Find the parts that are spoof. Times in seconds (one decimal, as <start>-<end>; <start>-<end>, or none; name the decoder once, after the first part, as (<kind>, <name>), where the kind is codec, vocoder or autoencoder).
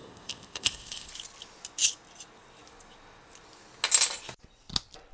0.0-1.1 (codec, ZipCodec)